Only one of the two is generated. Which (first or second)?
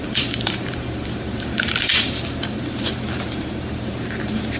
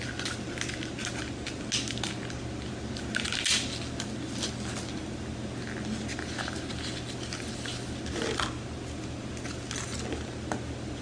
first